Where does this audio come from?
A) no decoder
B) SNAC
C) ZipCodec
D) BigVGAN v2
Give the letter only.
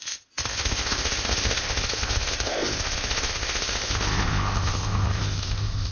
C